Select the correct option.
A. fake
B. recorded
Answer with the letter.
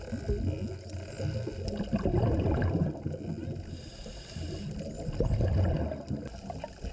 B